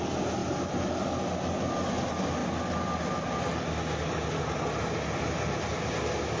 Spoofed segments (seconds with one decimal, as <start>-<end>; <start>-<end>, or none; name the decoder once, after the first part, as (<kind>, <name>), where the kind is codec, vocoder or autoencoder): none